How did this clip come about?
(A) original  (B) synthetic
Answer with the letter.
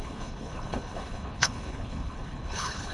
B